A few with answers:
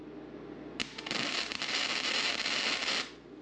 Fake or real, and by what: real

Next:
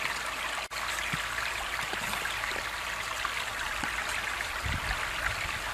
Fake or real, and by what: real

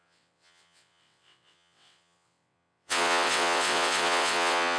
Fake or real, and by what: fake, vocoder, WaveNeXt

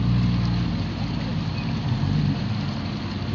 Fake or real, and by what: real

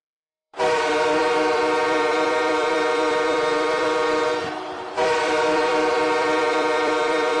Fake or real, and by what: fake, vocoder, BigVGAN v2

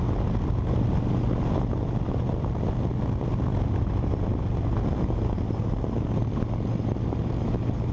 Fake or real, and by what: real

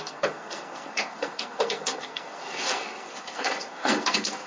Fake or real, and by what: fake, codec, SNAC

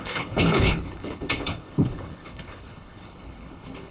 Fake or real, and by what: fake, codec, HILCodec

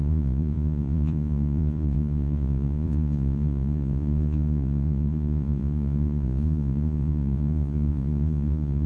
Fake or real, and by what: fake, vocoder, Vocos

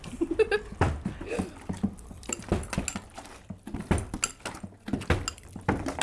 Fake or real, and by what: real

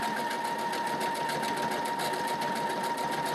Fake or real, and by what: real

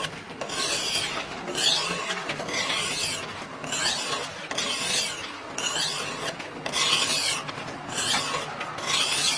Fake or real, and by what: real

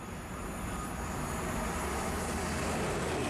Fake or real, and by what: real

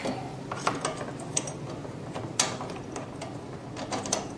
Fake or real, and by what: real